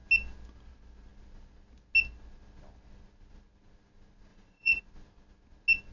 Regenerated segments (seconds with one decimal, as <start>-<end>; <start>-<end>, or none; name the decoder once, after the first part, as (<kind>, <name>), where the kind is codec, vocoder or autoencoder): 4.3-4.8 (vocoder, Vocos)